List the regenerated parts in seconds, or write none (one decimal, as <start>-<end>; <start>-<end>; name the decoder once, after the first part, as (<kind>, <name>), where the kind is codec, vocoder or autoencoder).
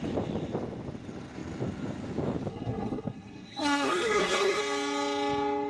2.5-4.6 (codec, SNAC)